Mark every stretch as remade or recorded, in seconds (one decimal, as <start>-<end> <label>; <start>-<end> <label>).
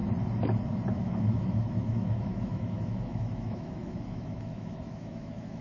0.0-0.9 recorded; 0.9-5.6 remade